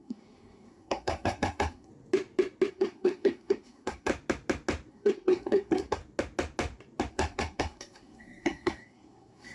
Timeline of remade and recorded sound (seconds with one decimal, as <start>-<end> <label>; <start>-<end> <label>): 0.0-1.9 remade; 1.9-2.7 recorded; 2.7-4.1 remade; 4.1-4.9 recorded; 4.9-6.0 remade; 6.0-7.1 recorded; 7.1-9.5 remade